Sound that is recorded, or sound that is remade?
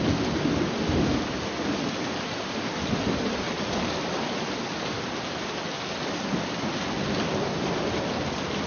recorded